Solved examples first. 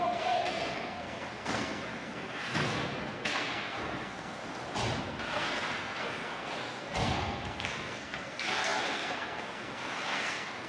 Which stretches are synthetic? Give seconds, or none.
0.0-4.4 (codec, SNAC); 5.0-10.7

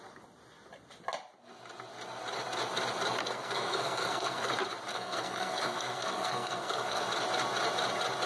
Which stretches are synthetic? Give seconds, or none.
3.2-4.5 (codec, SNAC); 4.9-7.0

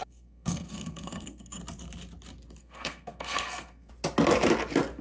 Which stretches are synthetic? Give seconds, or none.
0.0-1.6 (codec, SNAC); 2.6-3.9

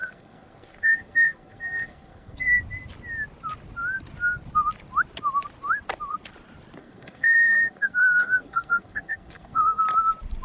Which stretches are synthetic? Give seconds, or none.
0.0-2.6 (codec, SNAC); 6.8-9.8

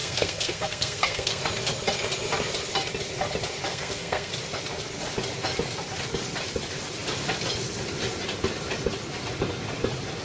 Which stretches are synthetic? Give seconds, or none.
0.0-1.4 (codec, SNAC); 3.7-4.3